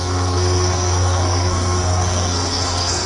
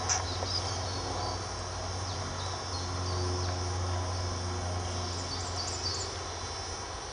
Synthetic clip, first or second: first